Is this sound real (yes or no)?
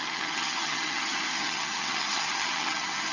no